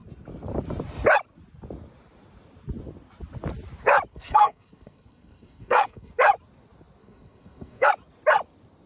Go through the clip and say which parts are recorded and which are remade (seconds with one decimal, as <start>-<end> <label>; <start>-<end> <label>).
0.0-4.1 recorded; 4.1-6.1 remade; 6.1-7.0 recorded; 7.0-7.9 remade; 7.9-8.9 recorded